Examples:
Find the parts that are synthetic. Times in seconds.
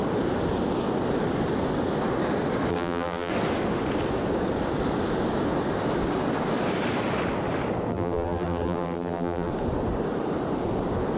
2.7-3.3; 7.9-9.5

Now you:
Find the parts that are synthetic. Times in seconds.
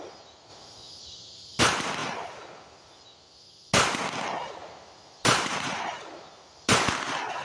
0.5-1.6; 2.0-2.5; 4.6-6.7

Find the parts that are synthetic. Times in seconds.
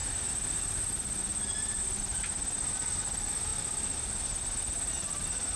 none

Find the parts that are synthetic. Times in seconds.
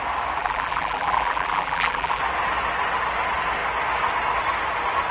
0.4-2.2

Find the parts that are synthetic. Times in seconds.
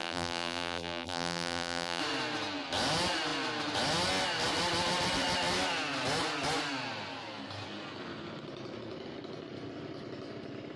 0.0-2.0